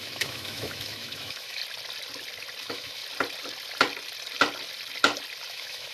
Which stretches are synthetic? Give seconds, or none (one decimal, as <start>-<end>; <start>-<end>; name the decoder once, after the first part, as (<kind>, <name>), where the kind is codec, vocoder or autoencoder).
0.0-1.6 (autoencoder, DAC-VAE); 2.6-3.0; 5.5-5.9